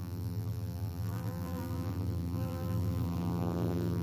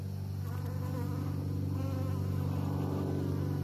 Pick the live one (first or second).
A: second